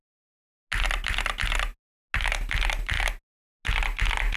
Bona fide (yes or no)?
yes